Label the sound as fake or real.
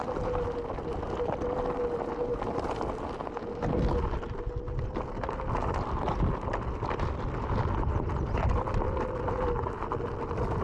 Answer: real